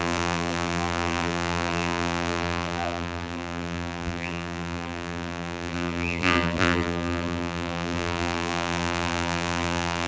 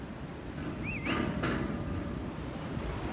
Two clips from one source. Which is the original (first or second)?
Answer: second